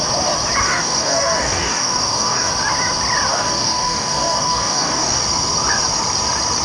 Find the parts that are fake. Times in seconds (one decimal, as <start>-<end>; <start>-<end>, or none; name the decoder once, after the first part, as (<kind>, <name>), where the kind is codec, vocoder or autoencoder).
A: 0.6-2.5 (codec, DAC); 3.3-5.2